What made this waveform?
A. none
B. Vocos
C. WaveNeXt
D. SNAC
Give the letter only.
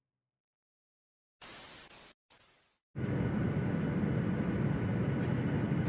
A